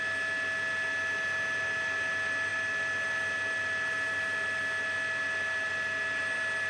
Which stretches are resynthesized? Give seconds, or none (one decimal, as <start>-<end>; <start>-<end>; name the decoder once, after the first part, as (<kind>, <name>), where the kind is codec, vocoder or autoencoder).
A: none